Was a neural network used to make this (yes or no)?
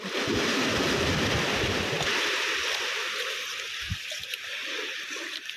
no